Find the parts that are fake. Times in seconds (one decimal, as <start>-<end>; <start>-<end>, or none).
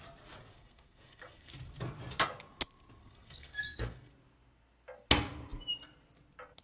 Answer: 0.5-1.5; 3.0-4.1